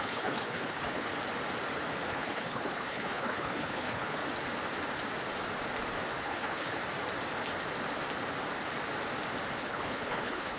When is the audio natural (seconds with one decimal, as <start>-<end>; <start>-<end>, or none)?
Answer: 1.1-2.1; 4.2-6.2; 6.8-9.6